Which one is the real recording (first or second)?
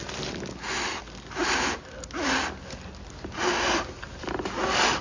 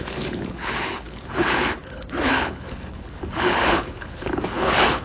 first